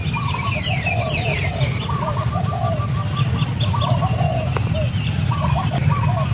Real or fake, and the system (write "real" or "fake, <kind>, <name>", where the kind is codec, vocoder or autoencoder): real